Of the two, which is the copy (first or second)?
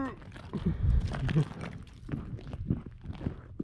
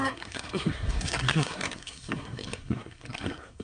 second